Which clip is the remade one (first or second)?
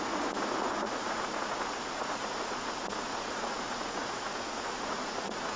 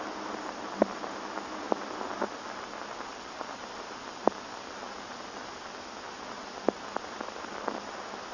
first